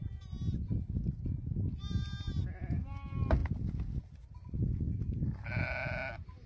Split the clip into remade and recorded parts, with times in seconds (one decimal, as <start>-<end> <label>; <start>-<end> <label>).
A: 0.0-6.5 recorded